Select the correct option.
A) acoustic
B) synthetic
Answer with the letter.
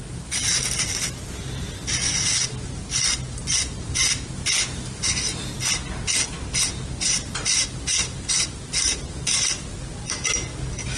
A